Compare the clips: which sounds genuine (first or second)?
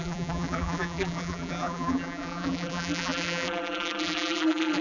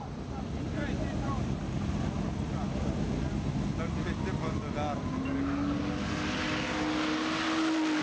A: second